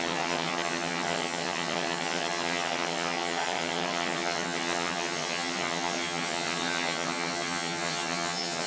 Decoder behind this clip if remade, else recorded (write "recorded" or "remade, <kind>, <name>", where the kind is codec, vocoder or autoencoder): remade, vocoder, HiFi-GAN